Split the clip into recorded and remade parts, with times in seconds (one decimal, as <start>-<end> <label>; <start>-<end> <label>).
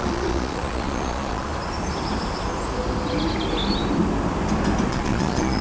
0.0-1.5 remade; 1.5-4.9 recorded; 4.9-5.6 remade